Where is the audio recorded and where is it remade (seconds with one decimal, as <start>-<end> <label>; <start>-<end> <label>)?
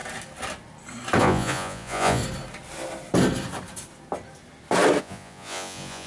0.0-1.2 recorded; 1.2-2.2 remade; 2.2-5.0 recorded; 5.0-6.1 remade